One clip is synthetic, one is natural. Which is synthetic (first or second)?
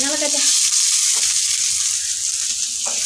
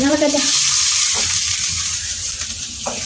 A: second